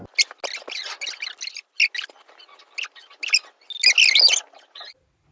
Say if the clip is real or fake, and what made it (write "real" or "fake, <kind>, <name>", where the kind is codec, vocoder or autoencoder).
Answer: real